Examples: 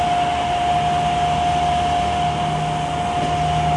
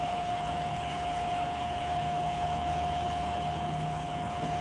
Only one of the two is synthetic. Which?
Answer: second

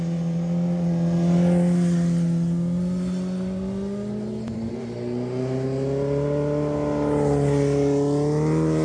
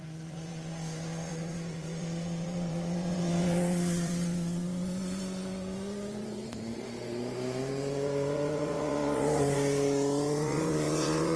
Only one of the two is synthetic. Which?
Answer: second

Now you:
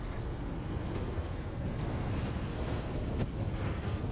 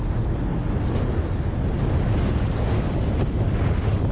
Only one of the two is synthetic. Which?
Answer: first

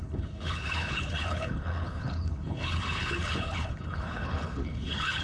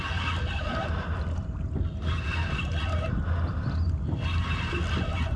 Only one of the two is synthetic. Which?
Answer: first